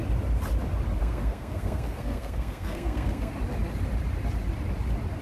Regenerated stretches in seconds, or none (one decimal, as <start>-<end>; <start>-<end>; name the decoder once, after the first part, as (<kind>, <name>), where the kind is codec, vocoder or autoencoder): 1.0-3.3 (codec, SNAC)